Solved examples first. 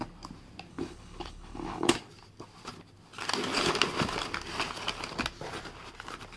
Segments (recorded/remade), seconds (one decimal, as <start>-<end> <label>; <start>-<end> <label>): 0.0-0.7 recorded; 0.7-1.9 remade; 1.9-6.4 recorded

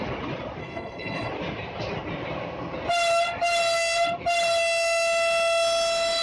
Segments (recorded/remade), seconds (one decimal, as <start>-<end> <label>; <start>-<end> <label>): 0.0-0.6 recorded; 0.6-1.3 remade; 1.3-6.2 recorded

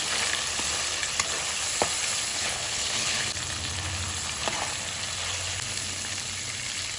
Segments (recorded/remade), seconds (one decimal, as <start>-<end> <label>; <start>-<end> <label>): 0.0-2.3 recorded; 2.3-3.2 remade; 3.2-7.0 recorded

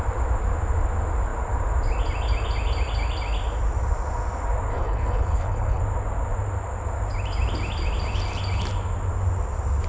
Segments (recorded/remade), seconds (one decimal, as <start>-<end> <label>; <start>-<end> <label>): 0.0-4.7 recorded; 4.7-5.8 remade; 5.8-9.9 recorded

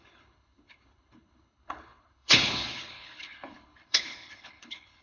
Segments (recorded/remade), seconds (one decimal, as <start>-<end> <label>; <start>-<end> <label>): 0.0-5.0 remade

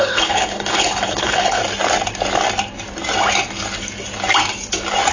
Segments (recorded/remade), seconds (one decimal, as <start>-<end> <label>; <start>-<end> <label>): 0.0-1.6 remade; 1.6-5.1 recorded

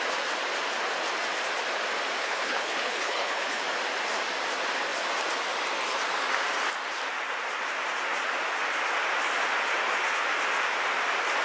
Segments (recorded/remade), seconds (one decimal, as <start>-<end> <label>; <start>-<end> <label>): 0.0-2.2 recorded; 2.2-3.6 remade; 3.6-11.4 recorded